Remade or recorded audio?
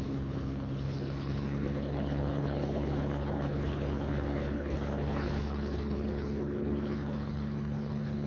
remade